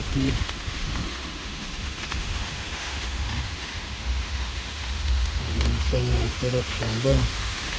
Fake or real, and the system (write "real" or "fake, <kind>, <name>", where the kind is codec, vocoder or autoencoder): fake, autoencoder, DAC-VAE